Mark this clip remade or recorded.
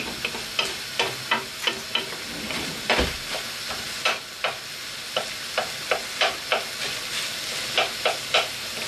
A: recorded